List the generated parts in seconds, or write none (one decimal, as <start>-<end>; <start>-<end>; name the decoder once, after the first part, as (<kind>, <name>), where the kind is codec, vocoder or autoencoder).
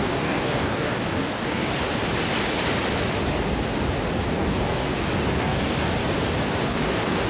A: 0.0-1.7 (codec, DAC); 4.3-4.9; 5.4-6.0; 6.6-7.3